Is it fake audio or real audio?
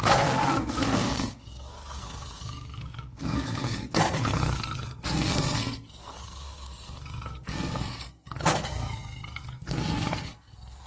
fake